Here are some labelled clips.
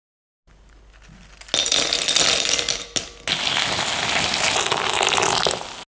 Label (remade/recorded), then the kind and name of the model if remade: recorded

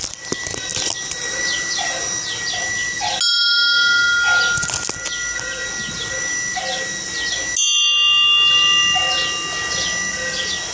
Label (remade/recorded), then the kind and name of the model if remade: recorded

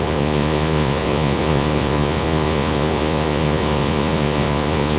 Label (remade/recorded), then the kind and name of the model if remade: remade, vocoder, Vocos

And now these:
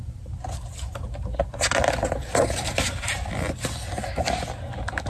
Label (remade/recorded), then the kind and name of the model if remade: recorded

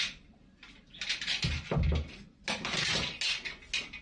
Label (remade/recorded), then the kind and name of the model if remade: recorded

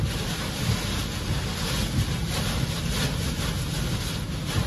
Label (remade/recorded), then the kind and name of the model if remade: recorded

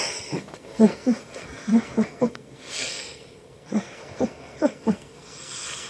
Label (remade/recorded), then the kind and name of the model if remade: remade, codec, SNAC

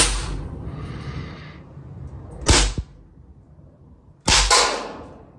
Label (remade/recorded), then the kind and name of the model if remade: recorded